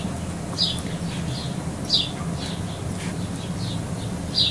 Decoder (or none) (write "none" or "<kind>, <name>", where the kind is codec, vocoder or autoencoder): none